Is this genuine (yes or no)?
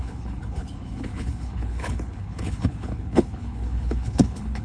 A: no